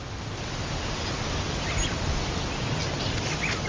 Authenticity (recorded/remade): recorded